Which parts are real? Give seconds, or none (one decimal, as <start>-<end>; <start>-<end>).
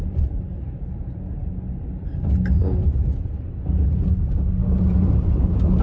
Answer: 0.0-5.8